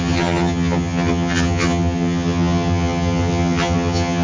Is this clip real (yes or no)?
no